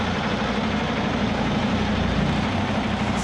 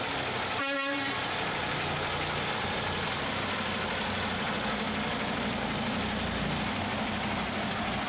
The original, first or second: second